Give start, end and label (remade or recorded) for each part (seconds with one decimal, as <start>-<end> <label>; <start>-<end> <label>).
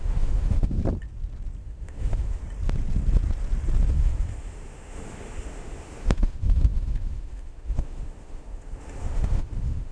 0.0-0.8 remade; 0.8-1.6 recorded; 1.6-2.4 remade; 2.4-3.9 recorded; 3.9-9.9 remade